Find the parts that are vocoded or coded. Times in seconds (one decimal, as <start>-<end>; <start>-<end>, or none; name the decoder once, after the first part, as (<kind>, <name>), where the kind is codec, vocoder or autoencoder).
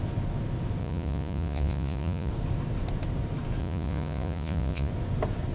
0.8-2.3 (vocoder, Vocos); 3.6-4.9